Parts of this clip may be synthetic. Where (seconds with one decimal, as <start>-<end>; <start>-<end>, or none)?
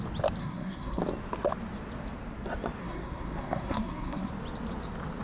0.4-1.0; 2.8-4.3